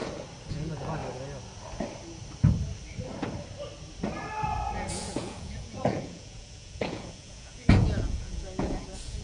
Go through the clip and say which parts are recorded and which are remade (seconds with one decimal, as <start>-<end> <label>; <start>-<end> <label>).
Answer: 0.0-0.5 recorded; 0.5-1.0 remade; 1.0-4.9 recorded; 4.9-9.2 remade